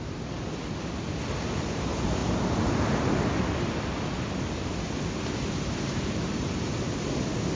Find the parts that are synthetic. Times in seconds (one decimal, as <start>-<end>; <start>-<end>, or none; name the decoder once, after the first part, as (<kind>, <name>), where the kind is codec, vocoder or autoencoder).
none